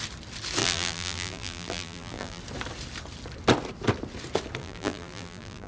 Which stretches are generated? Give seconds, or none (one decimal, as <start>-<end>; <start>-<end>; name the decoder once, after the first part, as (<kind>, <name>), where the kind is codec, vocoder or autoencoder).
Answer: 0.6-2.4 (vocoder, BigVGAN v2); 4.6-5.7